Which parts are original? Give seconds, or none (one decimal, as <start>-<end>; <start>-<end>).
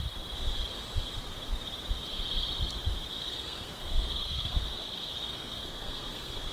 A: 0.0-3.1